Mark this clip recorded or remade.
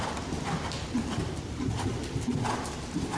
recorded